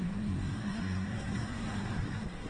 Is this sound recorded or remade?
remade